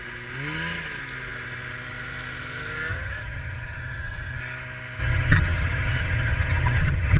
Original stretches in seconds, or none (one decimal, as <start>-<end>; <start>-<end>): 0.0-2.9; 4.4-5.0